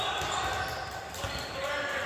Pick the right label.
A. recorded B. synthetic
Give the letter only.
A